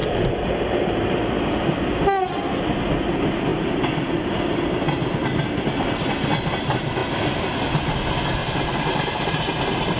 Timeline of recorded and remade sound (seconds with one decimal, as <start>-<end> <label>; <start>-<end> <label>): 0.0-0.5 remade; 0.5-3.5 recorded; 3.5-4.8 remade; 4.8-8.4 recorded; 8.4-10.0 remade